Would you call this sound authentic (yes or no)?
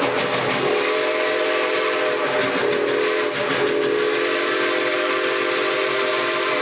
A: yes